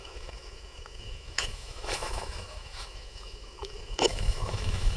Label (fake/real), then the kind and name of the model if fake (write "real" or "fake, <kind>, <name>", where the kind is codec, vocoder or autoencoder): fake, autoencoder, DAC-VAE